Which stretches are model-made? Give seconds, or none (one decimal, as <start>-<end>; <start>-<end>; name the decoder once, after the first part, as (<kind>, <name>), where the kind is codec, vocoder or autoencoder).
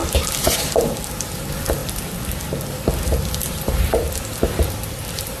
0.0-1.8 (vocoder, BigVGAN v2); 3.2-5.4